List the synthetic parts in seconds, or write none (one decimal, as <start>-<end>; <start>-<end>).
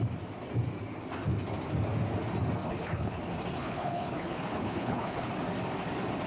2.6-3.2; 3.6-5.3